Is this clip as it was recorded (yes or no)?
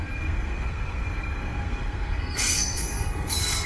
no